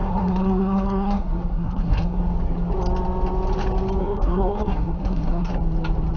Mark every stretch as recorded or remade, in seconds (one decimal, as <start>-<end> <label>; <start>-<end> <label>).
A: 0.0-2.2 remade; 2.2-4.0 recorded; 4.0-5.5 remade; 5.5-6.2 recorded